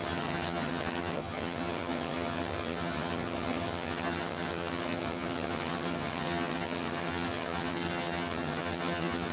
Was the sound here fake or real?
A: fake